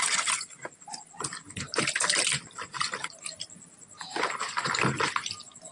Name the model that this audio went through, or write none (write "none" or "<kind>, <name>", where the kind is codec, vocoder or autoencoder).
none